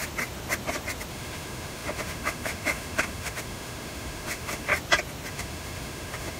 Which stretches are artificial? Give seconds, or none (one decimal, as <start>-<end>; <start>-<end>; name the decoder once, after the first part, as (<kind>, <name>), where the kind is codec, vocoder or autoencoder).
1.1-4.7 (autoencoder, DAC-VAE); 5.3-6.4

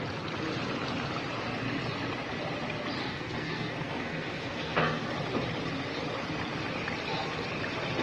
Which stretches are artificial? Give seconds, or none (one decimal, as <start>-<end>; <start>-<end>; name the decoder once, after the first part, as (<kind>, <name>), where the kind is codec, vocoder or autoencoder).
3.0-5.1 (codec, SNAC)

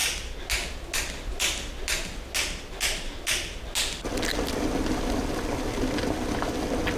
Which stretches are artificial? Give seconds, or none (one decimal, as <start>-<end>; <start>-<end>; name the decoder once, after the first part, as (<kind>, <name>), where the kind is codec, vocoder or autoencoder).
none

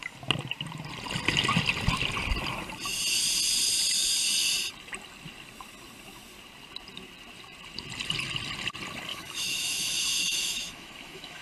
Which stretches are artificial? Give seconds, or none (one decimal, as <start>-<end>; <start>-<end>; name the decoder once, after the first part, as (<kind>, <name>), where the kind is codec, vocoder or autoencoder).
9.1-11.4 (autoencoder, DAC-VAE)

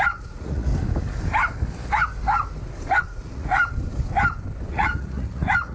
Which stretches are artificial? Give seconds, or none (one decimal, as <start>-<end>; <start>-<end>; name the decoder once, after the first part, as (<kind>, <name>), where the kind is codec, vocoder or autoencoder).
0.0-0.7 (vocoder, Vocos); 3.0-3.6; 4.7-5.7

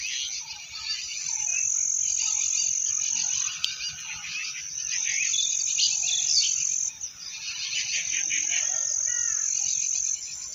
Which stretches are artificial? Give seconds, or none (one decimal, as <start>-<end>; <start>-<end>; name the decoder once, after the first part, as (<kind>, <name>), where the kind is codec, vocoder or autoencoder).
none